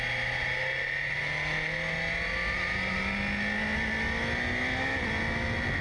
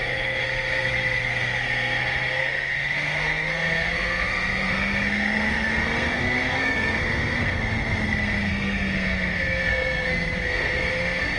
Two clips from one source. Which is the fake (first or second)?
second